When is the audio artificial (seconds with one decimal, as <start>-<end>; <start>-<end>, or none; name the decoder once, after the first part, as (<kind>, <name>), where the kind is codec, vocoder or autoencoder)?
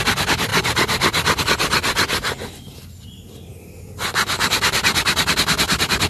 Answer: none